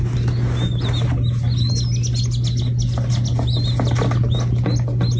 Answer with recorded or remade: recorded